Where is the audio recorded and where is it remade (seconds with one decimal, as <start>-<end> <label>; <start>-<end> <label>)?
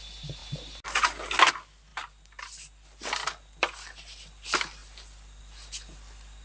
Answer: 0.0-6.4 recorded